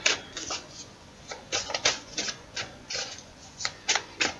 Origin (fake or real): fake